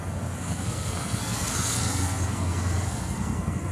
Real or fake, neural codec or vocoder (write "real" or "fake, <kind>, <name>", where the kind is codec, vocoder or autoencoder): fake, codec, SNAC